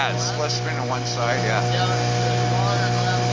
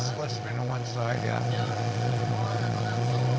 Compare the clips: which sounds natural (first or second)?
first